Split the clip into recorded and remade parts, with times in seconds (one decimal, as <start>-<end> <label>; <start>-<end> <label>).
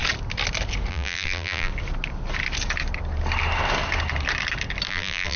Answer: 0.0-0.9 recorded; 0.9-1.7 remade; 1.7-4.9 recorded; 4.9-5.4 remade